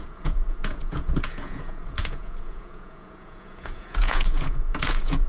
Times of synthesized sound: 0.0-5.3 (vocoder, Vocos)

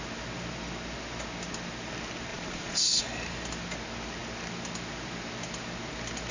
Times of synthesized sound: 2.3-3.0 (vocoder, Vocos)